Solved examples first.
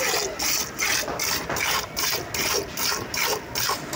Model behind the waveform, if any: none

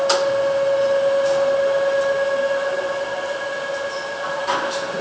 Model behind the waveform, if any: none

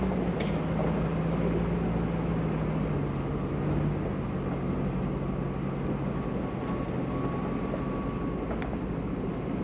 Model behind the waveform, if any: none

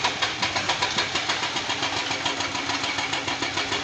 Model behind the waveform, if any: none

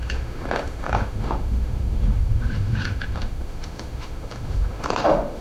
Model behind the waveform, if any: autoencoder, DAC-VAE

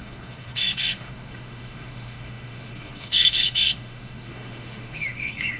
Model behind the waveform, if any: autoencoder, DAC-VAE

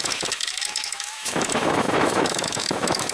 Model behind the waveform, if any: autoencoder, DAC-VAE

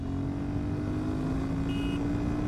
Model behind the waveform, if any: none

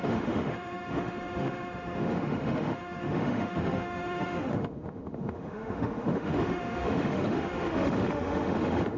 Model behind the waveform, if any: autoencoder, DAC-VAE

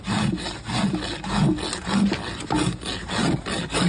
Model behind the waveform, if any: none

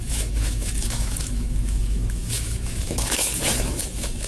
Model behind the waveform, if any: autoencoder, DAC-VAE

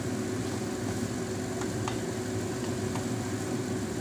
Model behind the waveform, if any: none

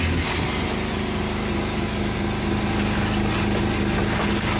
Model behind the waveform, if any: none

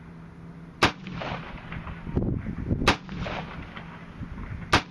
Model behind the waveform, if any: none